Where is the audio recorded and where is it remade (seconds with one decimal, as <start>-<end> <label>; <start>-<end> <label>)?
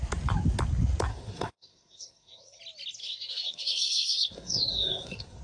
0.0-1.1 recorded; 1.1-2.6 remade; 2.6-3.0 recorded; 3.0-5.4 remade